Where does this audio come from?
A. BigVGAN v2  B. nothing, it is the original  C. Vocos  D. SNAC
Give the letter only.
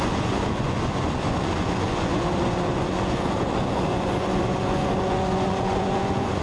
C